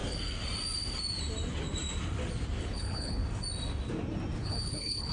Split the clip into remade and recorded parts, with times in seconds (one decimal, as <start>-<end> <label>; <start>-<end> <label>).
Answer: 0.0-2.6 recorded; 2.6-3.2 remade; 3.2-4.4 recorded; 4.4-5.1 remade